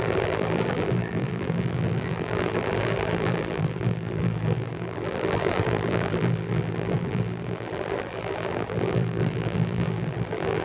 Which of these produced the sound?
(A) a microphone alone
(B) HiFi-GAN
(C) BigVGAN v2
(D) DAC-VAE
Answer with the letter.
C